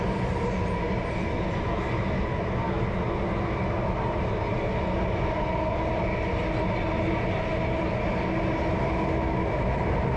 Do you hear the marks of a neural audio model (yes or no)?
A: no